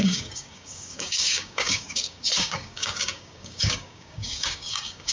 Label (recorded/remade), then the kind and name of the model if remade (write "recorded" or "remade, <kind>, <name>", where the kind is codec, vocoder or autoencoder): remade, codec, DAC